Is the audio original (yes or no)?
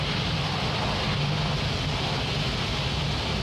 yes